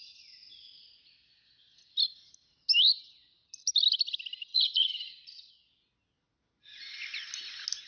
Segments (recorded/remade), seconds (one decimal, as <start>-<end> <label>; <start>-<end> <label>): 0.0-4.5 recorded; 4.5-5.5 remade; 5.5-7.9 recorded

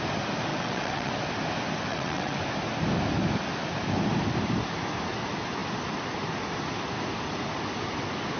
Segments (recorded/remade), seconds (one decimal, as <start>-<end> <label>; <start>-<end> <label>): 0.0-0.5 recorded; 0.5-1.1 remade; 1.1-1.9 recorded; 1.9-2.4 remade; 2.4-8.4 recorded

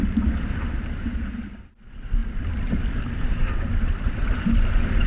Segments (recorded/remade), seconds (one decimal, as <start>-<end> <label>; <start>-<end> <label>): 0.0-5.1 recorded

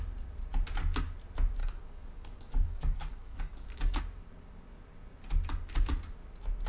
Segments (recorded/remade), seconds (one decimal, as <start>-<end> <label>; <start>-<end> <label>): 0.0-1.6 recorded; 1.6-4.0 remade; 4.0-6.7 recorded

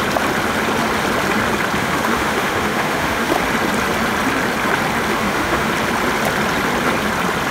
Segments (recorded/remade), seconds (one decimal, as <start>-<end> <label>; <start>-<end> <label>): 0.0-1.8 recorded; 1.8-3.4 remade; 3.4-5.1 recorded; 5.1-5.7 remade; 5.7-7.5 recorded

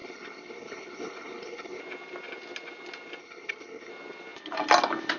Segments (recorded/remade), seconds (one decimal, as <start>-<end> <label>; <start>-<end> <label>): 0.0-1.8 remade; 1.8-3.2 recorded; 3.2-3.9 remade; 3.9-5.2 recorded